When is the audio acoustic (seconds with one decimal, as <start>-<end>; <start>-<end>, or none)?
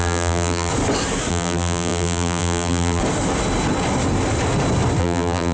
0.7-1.3; 3.0-5.0